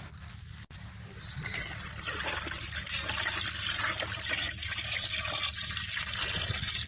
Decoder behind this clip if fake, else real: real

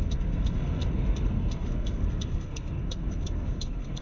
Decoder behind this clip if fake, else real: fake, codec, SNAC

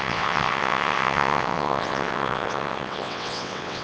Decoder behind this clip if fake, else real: fake, vocoder, WaveNeXt